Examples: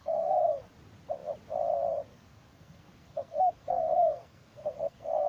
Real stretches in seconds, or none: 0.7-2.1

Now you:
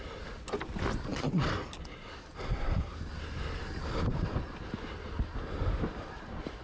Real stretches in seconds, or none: 0.0-6.6

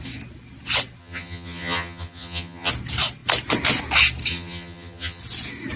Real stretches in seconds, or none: 0.0-1.0; 2.7-4.3; 5.2-5.8

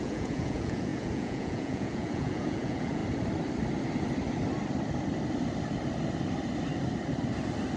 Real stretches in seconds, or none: 3.0-7.8